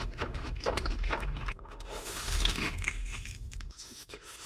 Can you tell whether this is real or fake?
fake